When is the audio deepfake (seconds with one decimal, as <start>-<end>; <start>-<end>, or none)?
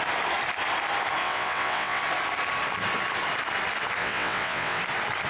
1.2-2.0; 4.0-4.8